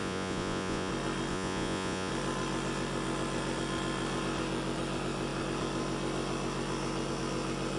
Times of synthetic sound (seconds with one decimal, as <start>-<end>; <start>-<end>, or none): 0.0-0.9; 1.3-2.1